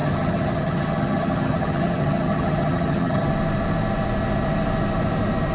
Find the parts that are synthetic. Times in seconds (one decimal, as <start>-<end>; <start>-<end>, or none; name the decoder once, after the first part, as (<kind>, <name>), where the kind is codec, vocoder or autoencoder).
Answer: 0.0-3.3 (vocoder, HiFi-GAN)